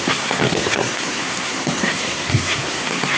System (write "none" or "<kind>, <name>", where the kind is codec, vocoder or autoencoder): codec, SNAC